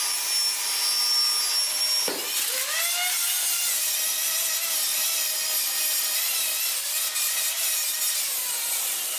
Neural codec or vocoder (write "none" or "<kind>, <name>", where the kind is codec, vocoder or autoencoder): none